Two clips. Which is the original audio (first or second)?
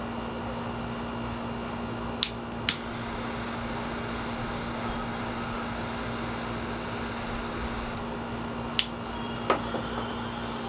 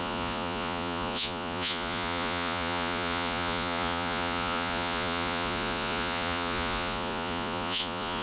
first